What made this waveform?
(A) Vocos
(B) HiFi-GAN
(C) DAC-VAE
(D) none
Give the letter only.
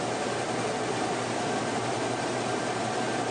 D